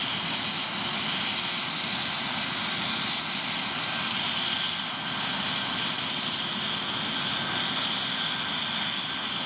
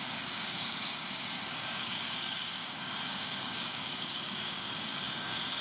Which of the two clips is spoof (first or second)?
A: second